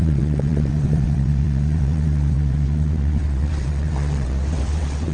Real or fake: fake